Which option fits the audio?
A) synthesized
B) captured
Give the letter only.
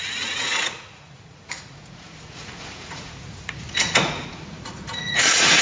A